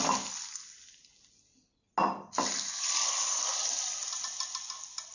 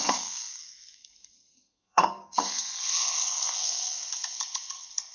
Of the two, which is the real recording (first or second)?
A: first